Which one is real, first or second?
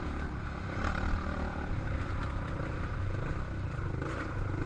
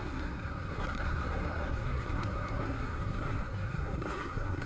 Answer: first